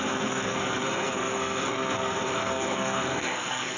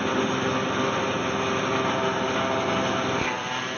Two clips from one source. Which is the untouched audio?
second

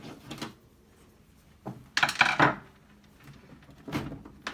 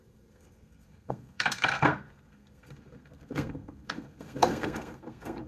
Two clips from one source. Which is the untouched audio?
first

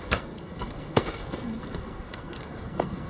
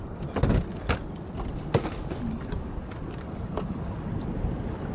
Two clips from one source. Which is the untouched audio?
second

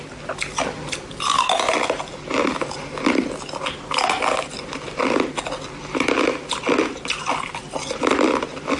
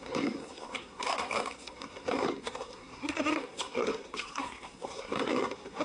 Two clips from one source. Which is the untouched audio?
first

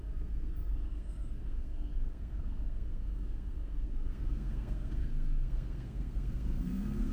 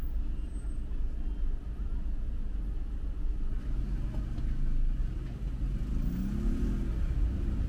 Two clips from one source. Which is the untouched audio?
second